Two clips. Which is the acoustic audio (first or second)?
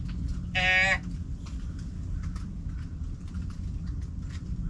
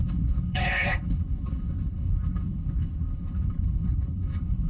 first